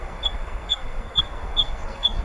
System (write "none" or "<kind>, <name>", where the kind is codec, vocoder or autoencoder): codec, SNAC